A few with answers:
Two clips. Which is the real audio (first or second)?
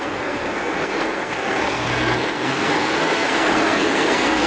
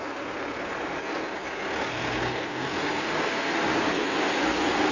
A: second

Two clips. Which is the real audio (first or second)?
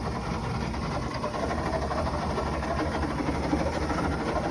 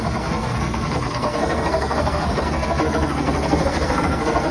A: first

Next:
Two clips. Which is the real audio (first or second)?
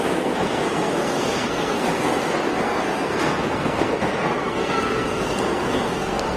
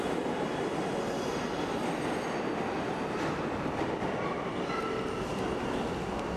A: second